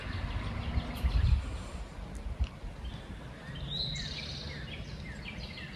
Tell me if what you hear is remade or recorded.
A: recorded